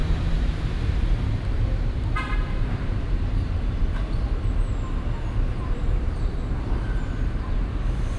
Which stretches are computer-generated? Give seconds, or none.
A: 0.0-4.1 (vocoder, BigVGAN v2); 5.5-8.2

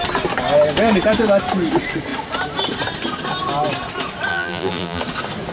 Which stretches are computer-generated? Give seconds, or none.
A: 4.3-5.0 (vocoder, BigVGAN v2)

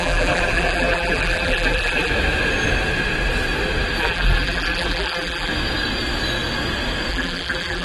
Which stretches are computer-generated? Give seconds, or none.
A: 0.0-2.1 (vocoder, BigVGAN v2); 4.0-5.5; 7.1-7.8

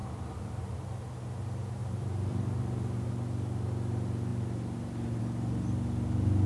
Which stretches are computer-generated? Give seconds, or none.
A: 1.8-3.1 (vocoder, BigVGAN v2)